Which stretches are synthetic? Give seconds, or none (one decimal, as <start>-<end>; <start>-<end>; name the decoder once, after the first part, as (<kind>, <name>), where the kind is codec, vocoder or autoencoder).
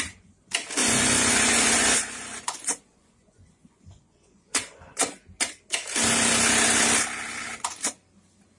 0.8-4.8 (vocoder, Vocos)